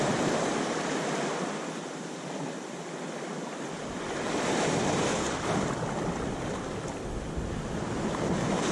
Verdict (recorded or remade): remade